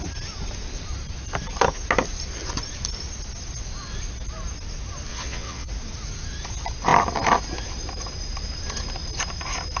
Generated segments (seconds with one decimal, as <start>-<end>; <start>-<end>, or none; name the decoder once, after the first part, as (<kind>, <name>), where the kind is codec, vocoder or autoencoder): 5.1-5.7 (vocoder, WaveNeXt)